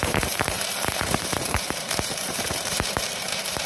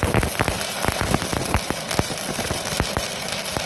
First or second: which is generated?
first